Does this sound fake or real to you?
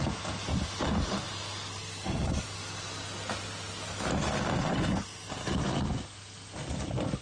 real